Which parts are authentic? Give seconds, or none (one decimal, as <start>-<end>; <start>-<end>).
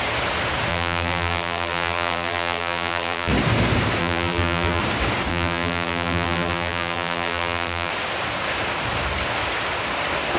0.0-0.7; 3.3-4.0; 4.8-5.3; 7.9-10.4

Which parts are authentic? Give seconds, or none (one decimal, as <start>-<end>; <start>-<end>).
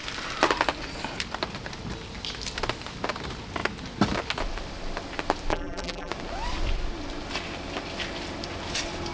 0.0-5.5; 6.1-9.1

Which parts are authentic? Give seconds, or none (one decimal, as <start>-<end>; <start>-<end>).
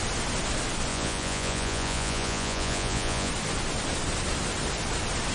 0.0-0.9; 3.3-5.3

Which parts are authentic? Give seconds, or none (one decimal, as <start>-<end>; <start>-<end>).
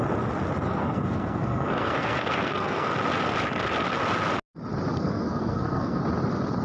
0.0-0.7; 2.9-4.9; 6.0-6.6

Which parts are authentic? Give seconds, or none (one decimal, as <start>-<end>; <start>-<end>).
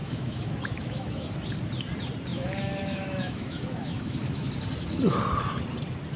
1.3-2.3; 4.5-6.2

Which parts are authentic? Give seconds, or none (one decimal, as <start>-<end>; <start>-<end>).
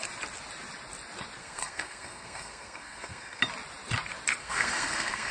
0.0-1.4; 3.4-4.4